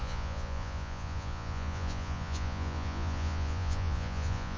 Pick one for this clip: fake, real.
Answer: fake